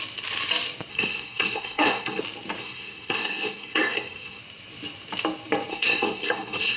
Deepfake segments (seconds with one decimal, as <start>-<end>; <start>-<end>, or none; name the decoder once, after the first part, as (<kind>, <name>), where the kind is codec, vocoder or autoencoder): 0.9-2.2 (codec, SNAC); 2.6-4.4; 5.7-6.8